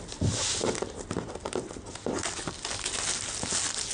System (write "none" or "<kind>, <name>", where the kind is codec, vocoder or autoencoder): none